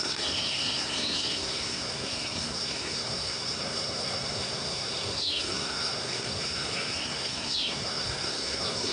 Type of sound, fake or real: fake